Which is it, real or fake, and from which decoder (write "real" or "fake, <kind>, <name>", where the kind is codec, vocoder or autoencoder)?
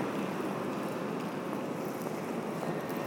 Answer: real